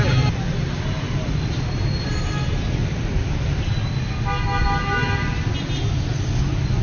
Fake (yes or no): no